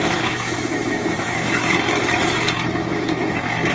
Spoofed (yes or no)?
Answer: yes